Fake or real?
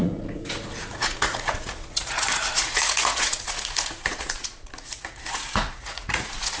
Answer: fake